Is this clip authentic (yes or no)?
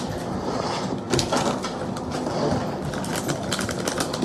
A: yes